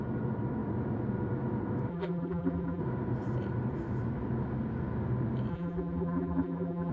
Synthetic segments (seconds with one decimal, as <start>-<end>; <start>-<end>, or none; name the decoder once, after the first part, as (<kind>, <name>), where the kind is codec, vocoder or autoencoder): 1.9-2.8 (vocoder, BigVGAN v2); 5.5-6.9